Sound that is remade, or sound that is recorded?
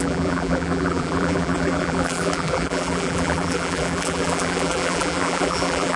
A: remade